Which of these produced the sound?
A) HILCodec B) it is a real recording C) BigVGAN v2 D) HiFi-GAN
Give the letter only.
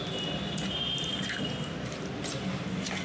B